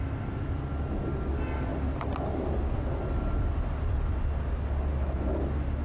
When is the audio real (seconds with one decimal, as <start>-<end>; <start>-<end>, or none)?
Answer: 0.0-5.8